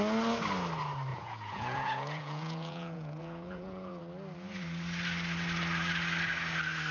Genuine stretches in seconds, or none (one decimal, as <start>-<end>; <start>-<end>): 0.0-1.1; 4.0-6.9